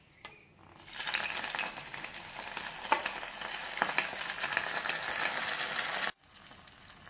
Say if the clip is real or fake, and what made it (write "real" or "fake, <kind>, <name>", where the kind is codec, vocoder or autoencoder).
real